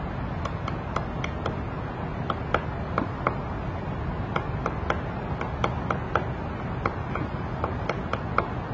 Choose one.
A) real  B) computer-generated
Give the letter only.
A